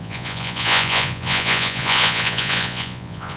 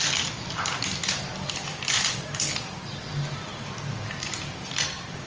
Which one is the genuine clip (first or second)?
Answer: second